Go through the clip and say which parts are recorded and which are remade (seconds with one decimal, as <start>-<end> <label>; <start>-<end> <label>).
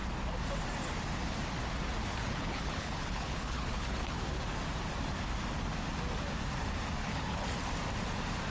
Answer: 0.0-2.1 recorded; 2.1-4.4 remade; 4.4-7.0 recorded; 7.0-7.5 remade; 7.5-8.5 recorded